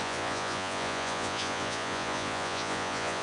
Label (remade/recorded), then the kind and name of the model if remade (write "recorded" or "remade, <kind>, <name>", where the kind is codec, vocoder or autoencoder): remade, vocoder, Vocos